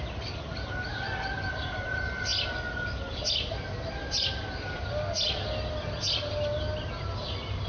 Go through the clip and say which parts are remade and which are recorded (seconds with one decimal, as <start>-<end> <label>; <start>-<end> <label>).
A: 0.0-7.7 recorded